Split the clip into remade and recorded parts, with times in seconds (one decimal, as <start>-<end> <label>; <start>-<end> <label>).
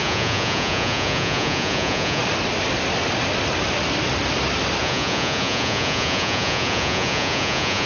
0.0-2.2 remade; 2.2-4.8 recorded; 4.8-7.9 remade